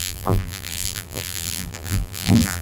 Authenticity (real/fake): fake